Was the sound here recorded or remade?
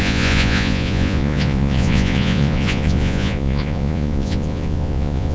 remade